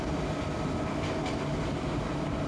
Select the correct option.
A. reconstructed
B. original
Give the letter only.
B